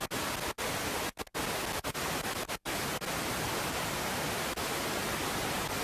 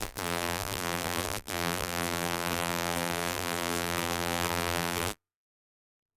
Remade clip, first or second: second